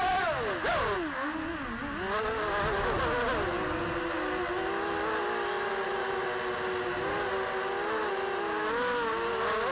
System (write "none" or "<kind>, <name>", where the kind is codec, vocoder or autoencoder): none